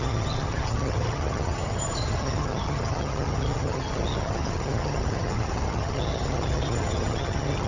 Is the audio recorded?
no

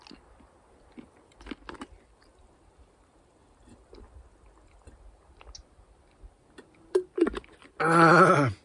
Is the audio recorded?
yes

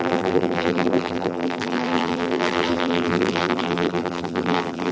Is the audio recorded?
no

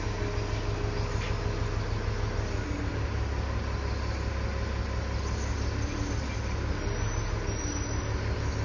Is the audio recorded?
yes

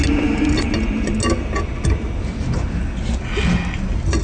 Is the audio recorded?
yes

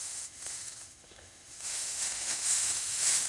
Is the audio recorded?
no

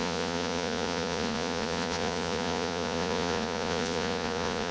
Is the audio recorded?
no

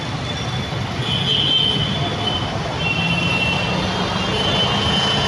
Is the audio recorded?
yes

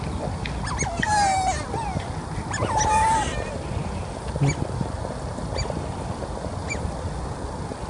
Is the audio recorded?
yes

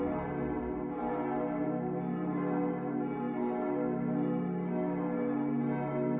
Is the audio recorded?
yes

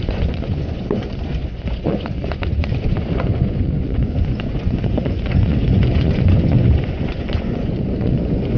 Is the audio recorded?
no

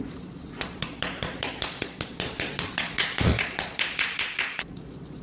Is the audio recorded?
no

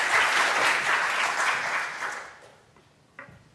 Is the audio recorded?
yes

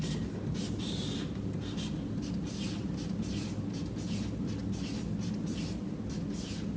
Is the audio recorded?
yes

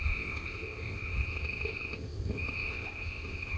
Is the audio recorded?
no